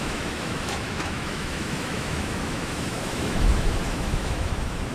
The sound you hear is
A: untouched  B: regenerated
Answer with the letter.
B